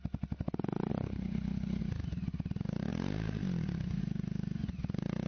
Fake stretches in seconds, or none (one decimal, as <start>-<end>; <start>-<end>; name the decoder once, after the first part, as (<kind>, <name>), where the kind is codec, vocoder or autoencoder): 0.9-1.8 (codec, HILCodec)